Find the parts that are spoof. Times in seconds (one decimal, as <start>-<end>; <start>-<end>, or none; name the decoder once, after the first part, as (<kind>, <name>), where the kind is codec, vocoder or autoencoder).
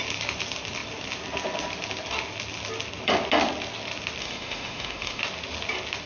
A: 4.2-5.2 (autoencoder, DAC-VAE)